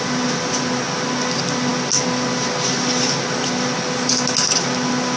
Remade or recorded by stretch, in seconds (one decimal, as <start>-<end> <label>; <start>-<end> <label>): 0.0-5.2 recorded

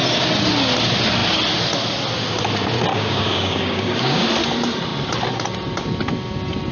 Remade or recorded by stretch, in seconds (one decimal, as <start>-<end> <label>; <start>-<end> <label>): 0.0-2.9 recorded; 2.9-4.3 remade; 4.3-6.7 recorded

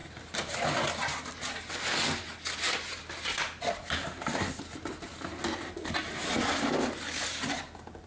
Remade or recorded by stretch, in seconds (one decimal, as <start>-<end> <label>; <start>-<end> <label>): 0.0-8.1 recorded

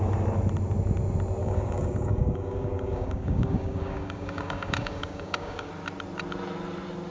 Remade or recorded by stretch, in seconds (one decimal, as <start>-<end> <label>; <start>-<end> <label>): 0.0-1.4 recorded; 1.4-5.7 remade; 5.7-7.1 recorded

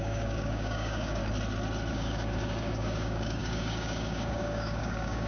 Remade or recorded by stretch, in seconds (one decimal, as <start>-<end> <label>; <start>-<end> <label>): 0.0-1.2 remade; 1.2-1.9 recorded; 1.9-5.3 remade